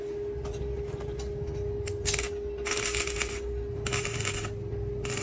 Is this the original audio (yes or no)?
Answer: yes